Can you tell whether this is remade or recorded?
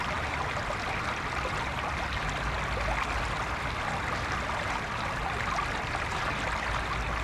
recorded